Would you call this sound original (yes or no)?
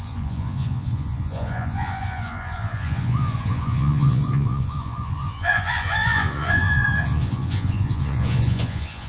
no